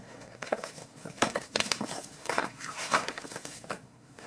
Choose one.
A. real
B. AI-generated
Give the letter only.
B